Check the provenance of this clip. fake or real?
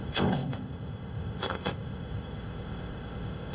fake